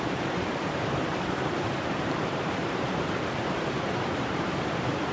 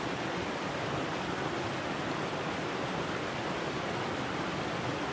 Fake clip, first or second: first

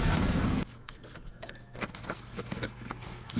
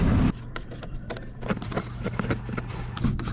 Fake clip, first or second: first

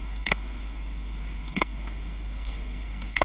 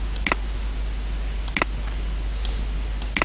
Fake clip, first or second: first